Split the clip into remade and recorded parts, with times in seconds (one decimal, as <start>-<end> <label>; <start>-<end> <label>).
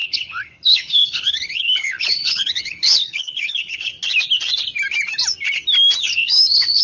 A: 0.0-3.9 remade; 3.9-6.0 recorded; 6.0-6.8 remade